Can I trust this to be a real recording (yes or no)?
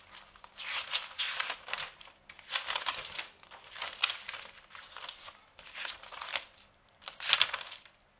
yes